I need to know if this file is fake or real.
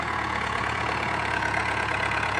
fake